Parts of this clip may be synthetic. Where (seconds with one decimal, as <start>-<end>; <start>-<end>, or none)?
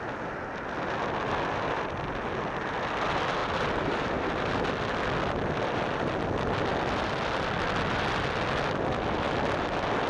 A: none